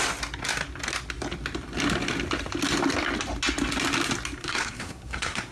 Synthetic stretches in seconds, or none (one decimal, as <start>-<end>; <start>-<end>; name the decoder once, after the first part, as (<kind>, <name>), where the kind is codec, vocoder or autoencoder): 4.4-5.5 (codec, SNAC)

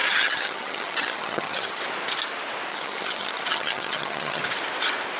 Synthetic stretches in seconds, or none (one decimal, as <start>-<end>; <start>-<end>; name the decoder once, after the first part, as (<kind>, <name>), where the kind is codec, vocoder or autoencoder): 0.0-1.8 (vocoder, HiFi-GAN); 2.7-4.4

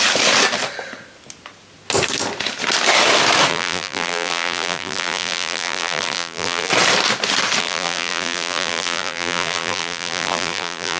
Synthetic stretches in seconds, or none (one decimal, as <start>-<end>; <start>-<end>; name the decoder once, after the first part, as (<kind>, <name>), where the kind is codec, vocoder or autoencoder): 3.5-6.7 (vocoder, BigVGAN v2); 7.6-11.0

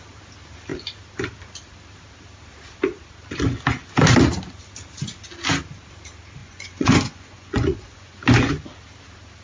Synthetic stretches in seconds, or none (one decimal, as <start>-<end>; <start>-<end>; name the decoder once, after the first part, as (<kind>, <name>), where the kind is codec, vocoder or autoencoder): 6.4-8.2 (vocoder, Vocos)

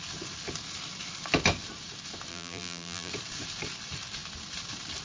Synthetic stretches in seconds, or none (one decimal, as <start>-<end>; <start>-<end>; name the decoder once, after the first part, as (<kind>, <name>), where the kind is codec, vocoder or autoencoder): 2.3-3.1 (vocoder, BigVGAN v2)

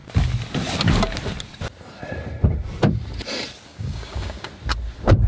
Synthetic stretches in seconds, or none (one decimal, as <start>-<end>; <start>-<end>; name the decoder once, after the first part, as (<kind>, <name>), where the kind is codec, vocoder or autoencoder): 3.7-4.5 (codec, DAC)

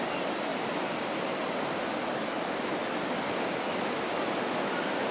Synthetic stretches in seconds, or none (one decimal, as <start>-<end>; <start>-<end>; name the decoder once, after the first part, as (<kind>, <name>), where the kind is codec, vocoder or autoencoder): 0.5-3.0 (vocoder, BigVGAN v2)